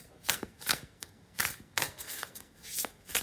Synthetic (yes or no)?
yes